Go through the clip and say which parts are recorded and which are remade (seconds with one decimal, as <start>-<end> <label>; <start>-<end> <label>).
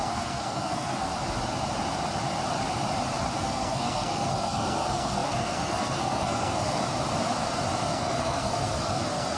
0.0-1.1 remade; 1.1-3.4 recorded; 3.4-6.8 remade; 6.8-7.8 recorded; 7.8-9.4 remade